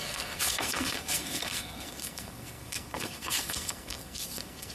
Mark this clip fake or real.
fake